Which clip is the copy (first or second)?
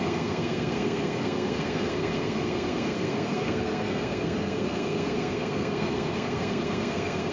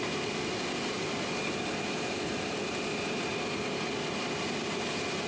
first